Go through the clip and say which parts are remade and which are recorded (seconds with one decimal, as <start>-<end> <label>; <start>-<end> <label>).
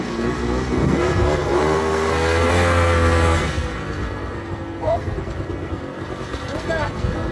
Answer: 0.0-7.3 remade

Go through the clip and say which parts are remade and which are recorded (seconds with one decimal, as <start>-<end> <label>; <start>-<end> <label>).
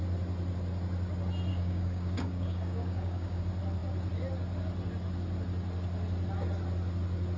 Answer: 0.0-1.5 recorded; 1.5-3.4 remade; 3.4-7.4 recorded